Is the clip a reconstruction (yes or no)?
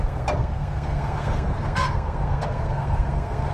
yes